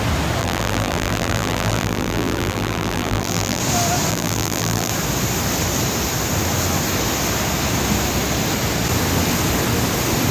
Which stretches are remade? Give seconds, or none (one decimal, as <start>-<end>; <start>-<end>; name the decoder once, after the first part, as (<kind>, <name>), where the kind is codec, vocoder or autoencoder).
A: 0.4-3.6 (vocoder, BigVGAN v2); 4.1-4.9